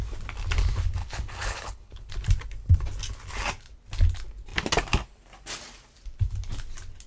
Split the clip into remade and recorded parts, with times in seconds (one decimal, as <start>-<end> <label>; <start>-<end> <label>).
0.0-1.0 recorded; 1.0-2.1 remade; 2.1-7.1 recorded